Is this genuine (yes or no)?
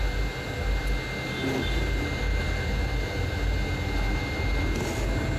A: yes